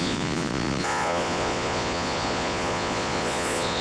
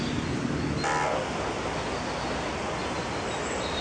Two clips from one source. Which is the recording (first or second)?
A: second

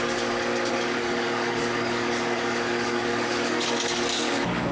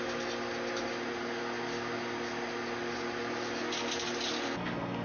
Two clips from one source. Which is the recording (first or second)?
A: second